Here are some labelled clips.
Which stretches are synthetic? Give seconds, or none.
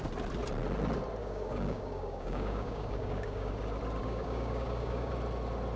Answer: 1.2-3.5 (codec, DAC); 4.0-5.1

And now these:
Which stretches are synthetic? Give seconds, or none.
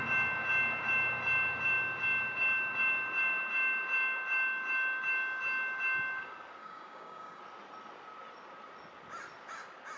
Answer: 6.6-7.4 (codec, DAC)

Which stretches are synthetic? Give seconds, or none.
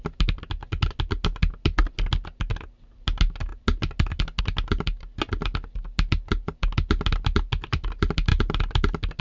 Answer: none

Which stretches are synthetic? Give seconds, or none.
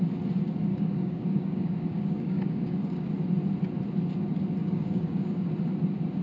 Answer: 0.7-3.1 (codec, DAC); 4.6-5.5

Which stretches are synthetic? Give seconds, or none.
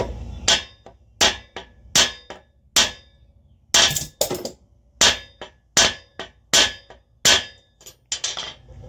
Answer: none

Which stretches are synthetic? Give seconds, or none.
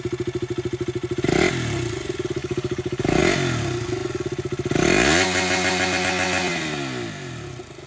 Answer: 2.4-3.2 (codec, DAC)